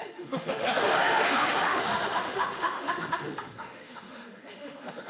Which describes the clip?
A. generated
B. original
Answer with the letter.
A